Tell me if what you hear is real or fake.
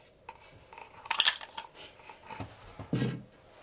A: real